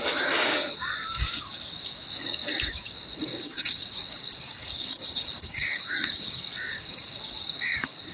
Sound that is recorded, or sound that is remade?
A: remade